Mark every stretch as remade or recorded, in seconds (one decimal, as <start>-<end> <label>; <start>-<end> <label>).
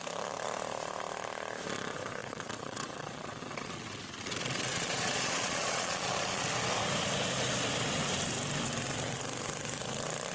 0.0-2.2 recorded; 2.2-6.5 remade; 6.5-10.3 recorded